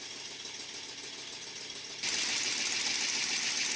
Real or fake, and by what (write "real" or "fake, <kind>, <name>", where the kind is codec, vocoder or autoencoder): real